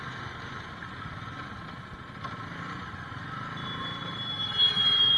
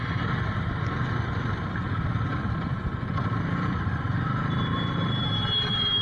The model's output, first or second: second